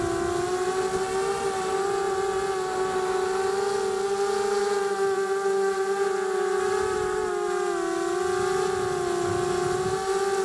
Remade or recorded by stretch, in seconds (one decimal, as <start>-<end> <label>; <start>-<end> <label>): 0.0-4.6 recorded; 4.6-7.3 remade; 7.3-10.4 recorded